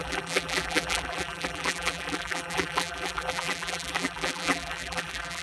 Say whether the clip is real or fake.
fake